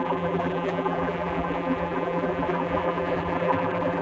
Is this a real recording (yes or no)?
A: no